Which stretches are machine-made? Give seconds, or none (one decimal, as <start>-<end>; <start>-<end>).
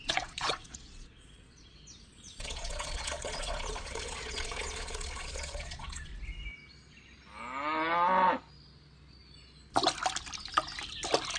0.0-6.1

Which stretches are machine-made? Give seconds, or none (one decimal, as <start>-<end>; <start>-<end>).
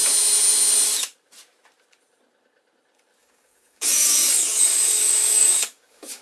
3.2-6.2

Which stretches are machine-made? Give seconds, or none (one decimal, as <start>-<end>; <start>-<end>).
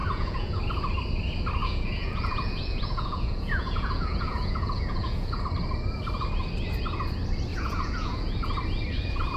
0.0-0.6; 1.6-5.4; 7.5-8.4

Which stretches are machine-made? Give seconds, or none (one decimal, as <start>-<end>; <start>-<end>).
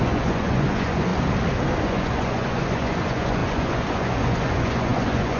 0.0-1.1; 1.8-5.4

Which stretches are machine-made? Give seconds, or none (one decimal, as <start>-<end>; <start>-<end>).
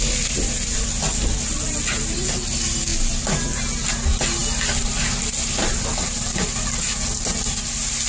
none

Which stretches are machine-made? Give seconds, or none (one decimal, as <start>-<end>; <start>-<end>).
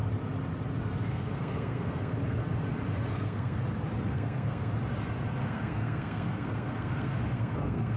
1.1-2.4; 3.1-3.6; 4.1-4.7; 5.4-8.0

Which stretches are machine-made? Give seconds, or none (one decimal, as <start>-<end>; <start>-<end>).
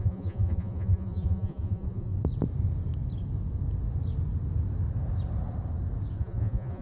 0.0-2.1; 6.2-6.8